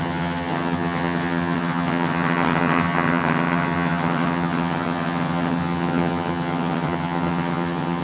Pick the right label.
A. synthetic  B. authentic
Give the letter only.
A